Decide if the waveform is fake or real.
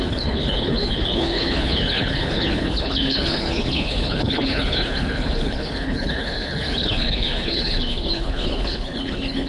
fake